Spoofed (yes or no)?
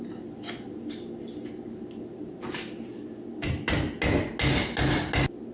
no